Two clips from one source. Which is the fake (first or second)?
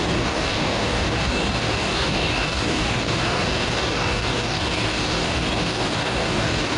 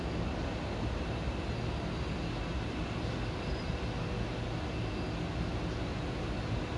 first